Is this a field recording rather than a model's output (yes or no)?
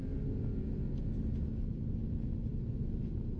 yes